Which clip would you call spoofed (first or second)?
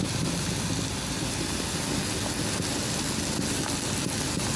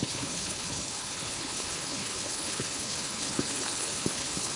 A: second